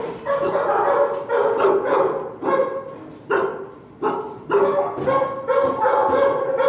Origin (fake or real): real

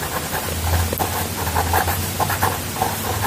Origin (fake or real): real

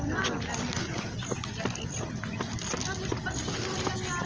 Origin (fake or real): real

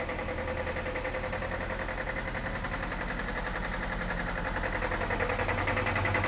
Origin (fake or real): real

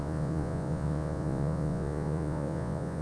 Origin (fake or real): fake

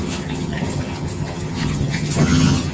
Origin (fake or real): fake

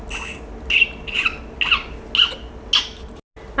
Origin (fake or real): real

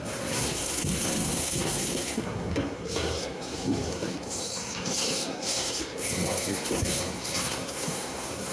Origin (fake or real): fake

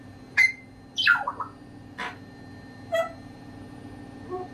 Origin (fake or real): real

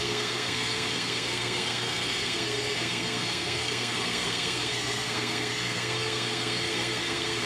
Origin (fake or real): fake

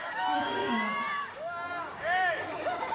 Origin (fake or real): fake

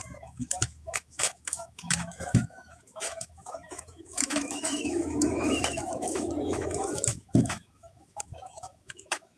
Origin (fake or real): fake